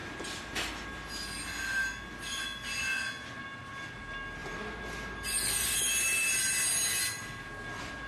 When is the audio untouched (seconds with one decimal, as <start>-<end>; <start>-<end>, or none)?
0.7-8.1